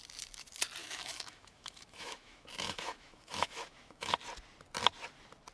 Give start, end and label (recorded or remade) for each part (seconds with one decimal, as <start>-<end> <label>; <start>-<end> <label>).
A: 0.0-0.8 recorded; 0.8-4.1 remade; 4.1-5.5 recorded